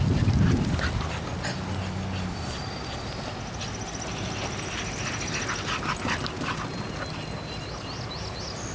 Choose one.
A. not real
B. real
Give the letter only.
B